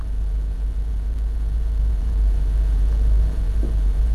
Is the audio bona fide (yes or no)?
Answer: no